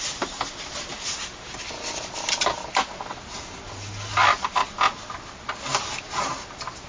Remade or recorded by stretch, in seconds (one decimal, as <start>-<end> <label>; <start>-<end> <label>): 0.0-6.9 recorded